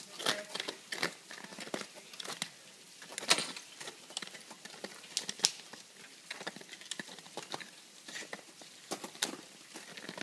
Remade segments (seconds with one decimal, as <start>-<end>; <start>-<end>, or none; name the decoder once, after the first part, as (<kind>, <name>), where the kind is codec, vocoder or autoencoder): none